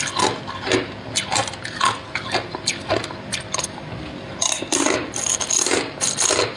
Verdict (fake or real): real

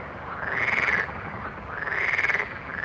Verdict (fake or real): real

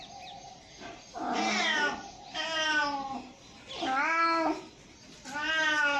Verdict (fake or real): real